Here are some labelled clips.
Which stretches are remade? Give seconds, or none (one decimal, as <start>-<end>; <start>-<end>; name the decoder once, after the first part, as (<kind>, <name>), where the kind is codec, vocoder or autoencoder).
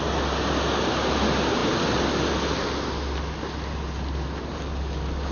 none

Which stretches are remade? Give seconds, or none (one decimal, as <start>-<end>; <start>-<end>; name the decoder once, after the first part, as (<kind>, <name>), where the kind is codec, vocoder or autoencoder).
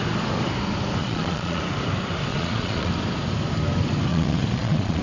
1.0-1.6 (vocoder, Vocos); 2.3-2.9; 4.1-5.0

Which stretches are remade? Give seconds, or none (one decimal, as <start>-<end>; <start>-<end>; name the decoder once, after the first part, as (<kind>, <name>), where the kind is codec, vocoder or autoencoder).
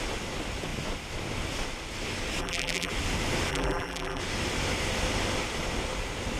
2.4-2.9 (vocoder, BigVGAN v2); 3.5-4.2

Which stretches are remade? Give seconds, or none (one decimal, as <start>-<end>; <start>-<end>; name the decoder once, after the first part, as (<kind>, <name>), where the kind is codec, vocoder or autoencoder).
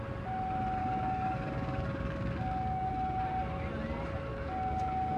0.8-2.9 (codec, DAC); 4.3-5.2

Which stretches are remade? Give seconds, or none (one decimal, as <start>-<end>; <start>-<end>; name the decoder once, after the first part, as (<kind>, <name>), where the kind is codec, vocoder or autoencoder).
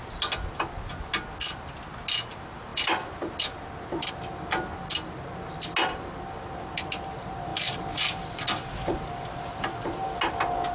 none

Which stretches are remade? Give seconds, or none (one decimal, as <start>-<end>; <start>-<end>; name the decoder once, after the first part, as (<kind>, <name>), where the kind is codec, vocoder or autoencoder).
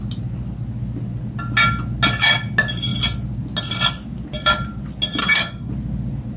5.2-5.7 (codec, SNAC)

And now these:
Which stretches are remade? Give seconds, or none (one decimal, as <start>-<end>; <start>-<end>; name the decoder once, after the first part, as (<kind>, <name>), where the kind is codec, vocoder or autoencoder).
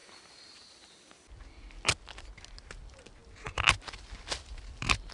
none